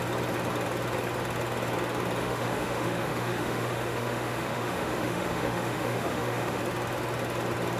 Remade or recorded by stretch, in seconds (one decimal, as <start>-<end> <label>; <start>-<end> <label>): 0.0-2.2 recorded; 2.2-6.6 remade; 6.6-7.8 recorded